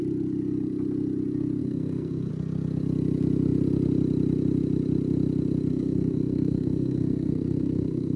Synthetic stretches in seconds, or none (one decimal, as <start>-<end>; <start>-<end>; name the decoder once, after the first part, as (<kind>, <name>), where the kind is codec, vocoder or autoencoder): 1.6-2.3 (codec, SNAC); 5.7-8.2